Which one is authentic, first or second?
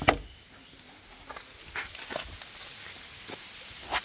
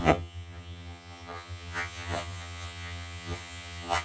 first